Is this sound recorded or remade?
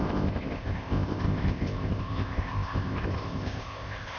remade